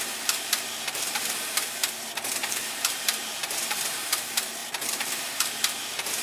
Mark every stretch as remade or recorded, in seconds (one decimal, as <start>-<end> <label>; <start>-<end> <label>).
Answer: 0.0-1.8 remade; 1.8-2.5 recorded; 2.5-6.2 remade